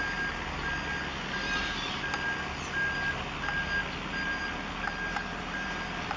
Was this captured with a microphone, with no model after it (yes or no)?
yes